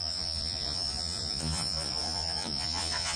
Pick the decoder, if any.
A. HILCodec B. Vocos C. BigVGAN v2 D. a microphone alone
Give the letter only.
B